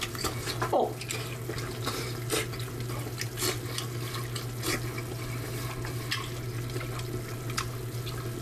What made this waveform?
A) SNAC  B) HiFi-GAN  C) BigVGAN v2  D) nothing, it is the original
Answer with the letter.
D